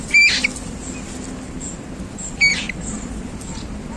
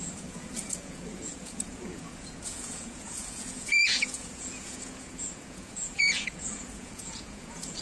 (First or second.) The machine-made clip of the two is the second